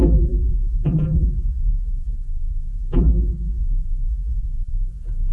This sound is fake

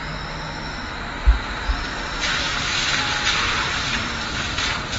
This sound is real